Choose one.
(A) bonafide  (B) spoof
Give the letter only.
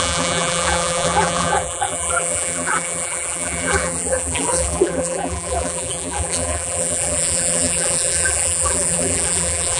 B